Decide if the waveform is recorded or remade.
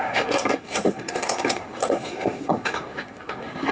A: remade